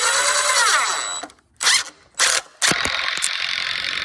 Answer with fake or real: real